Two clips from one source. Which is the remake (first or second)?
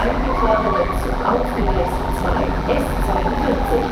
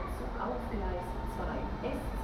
first